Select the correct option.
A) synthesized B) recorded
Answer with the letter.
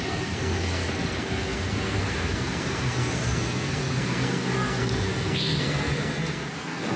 A